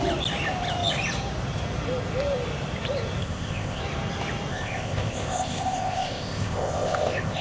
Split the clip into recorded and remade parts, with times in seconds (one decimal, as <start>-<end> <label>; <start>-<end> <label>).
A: 0.0-3.2 recorded; 3.2-3.8 remade; 3.8-4.5 recorded; 4.5-7.4 remade